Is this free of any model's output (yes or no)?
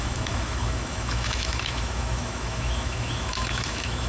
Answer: no